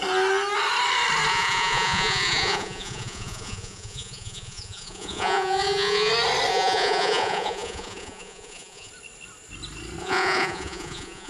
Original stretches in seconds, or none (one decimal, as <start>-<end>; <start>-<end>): 0.0-1.3; 6.1-6.5; 8.9-10.0